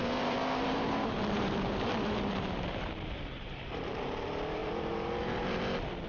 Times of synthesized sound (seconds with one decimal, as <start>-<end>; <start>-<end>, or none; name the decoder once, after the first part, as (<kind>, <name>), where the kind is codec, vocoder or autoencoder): 0.0-3.2 (vocoder, BigVGAN v2); 4.6-5.6